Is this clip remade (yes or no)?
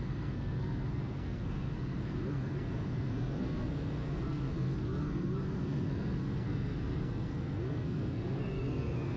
yes